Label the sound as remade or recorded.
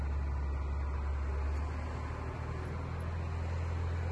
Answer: recorded